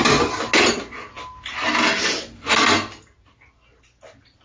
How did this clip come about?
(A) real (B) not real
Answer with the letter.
A